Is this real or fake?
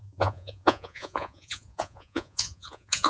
fake